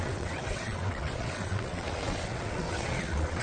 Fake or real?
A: fake